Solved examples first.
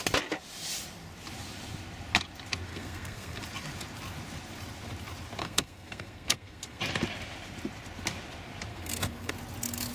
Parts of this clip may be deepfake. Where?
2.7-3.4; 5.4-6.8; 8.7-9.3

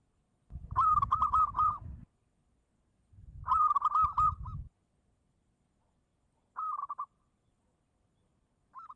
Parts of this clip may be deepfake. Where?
0.0-6.1; 6.8-9.0